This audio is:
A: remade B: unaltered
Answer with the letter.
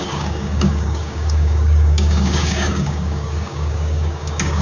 A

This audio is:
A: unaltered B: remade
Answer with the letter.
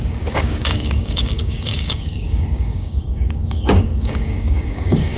B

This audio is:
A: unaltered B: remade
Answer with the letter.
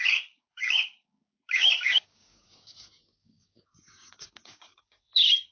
B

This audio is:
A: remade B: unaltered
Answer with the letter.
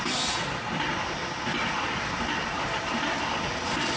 B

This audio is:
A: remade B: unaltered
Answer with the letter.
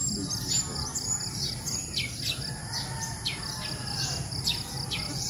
B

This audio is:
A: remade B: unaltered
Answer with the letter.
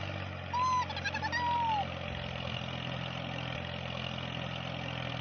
B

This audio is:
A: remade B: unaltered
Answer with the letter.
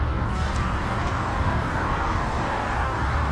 A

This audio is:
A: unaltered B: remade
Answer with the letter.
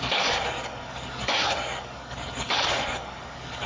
B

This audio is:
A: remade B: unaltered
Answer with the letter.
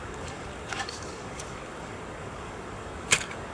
A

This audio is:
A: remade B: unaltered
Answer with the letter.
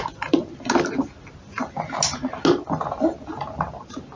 B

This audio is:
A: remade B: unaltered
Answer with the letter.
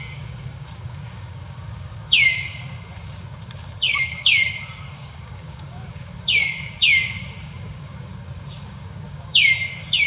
A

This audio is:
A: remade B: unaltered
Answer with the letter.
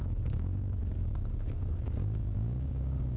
A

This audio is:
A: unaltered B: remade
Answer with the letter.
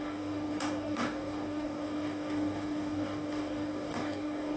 B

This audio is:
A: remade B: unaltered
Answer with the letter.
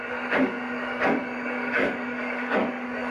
A